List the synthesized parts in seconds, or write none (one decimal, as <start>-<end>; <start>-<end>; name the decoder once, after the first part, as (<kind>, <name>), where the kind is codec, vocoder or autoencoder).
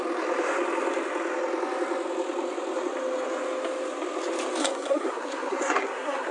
4.6-6.3 (codec, SNAC)